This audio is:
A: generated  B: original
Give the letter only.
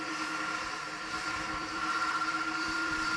A